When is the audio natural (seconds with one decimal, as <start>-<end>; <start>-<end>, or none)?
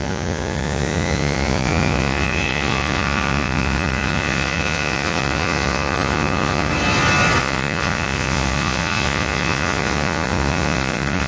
6.7-7.4